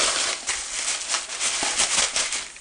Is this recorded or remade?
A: recorded